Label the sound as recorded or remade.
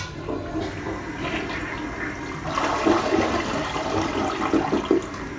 recorded